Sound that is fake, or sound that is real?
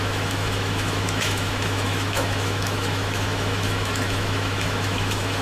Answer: fake